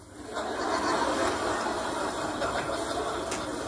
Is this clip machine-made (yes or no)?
no